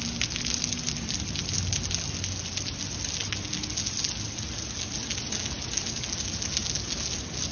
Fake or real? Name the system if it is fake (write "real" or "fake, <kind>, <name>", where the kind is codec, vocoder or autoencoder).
real